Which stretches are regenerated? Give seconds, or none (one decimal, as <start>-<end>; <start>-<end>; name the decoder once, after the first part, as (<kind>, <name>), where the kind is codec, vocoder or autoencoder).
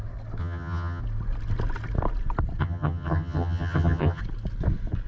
0.4-1.0 (vocoder, HiFi-GAN); 2.6-4.2